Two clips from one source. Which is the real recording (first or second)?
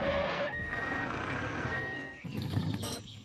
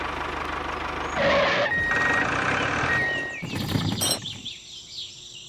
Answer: second